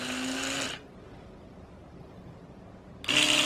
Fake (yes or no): no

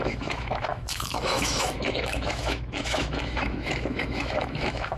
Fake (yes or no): yes